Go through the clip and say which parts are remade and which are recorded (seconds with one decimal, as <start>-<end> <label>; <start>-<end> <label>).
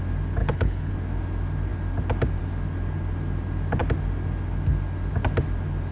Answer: 0.0-0.4 recorded; 0.4-0.9 remade; 0.9-5.9 recorded